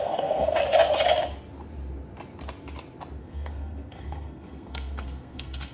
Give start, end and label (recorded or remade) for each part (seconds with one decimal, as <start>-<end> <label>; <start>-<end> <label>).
0.0-0.6 remade; 0.6-3.2 recorded; 3.2-5.7 remade